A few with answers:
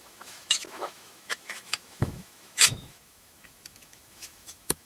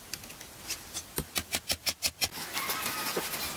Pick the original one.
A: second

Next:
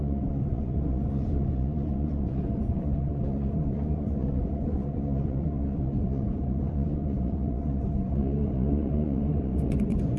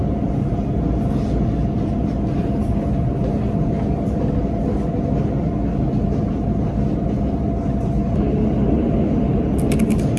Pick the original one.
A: second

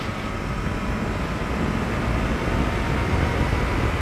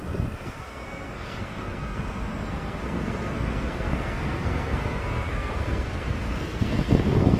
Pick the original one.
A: first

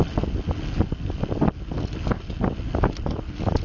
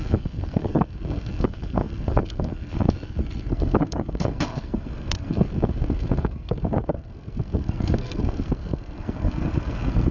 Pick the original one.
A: first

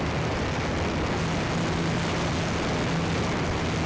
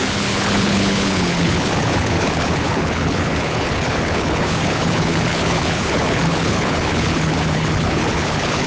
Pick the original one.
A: first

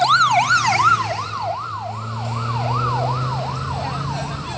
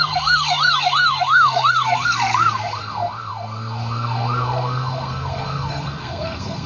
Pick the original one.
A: first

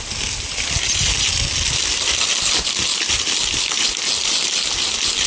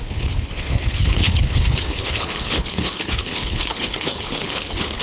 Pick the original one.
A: first